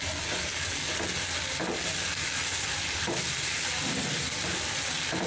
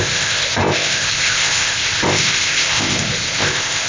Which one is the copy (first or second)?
second